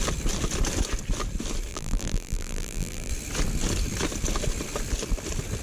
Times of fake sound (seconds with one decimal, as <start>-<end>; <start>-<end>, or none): 1.7-3.1